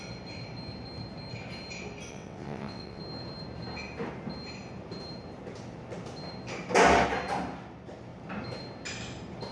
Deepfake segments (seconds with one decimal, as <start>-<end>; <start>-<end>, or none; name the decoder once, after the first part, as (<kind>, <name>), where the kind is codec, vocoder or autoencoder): 2.1-3.0 (vocoder, WaveNeXt)